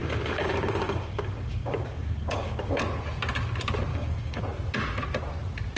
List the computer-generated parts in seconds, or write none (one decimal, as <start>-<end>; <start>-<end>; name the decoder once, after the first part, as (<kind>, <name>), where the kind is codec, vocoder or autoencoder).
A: 0.0-2.8 (codec, DAC); 3.9-4.4